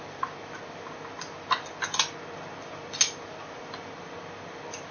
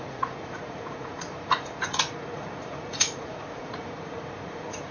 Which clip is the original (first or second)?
first